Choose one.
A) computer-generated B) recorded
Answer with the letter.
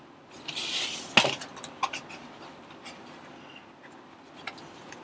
B